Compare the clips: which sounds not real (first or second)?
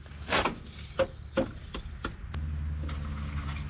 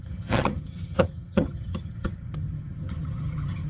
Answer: second